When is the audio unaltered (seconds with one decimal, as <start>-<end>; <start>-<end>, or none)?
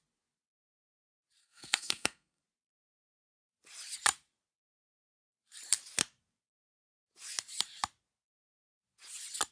0.0-1.4; 2.4-9.5